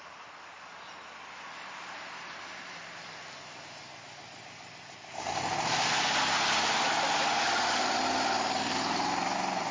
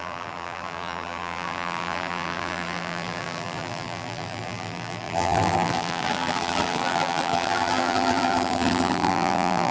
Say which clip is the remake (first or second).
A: second